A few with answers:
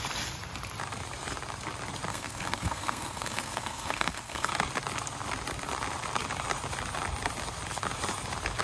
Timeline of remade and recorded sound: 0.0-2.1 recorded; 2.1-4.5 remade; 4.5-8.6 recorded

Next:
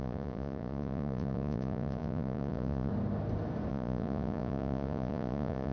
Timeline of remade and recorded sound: 0.0-2.9 remade; 2.9-3.7 recorded; 3.7-5.7 remade

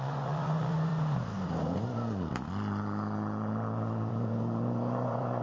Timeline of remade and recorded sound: 0.0-0.9 remade; 0.9-4.1 recorded; 4.1-5.4 remade